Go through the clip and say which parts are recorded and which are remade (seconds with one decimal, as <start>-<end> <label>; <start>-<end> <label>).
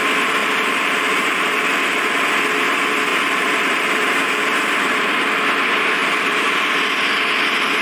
0.0-0.4 recorded; 0.4-2.0 remade; 2.0-3.1 recorded; 3.1-5.4 remade; 5.4-6.0 recorded; 6.0-6.7 remade; 6.7-7.8 recorded